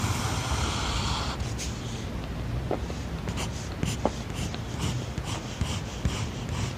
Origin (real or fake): real